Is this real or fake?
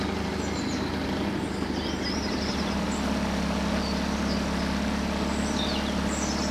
real